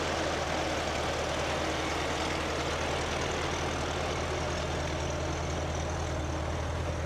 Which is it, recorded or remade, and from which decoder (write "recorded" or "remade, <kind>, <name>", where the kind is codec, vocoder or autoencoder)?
recorded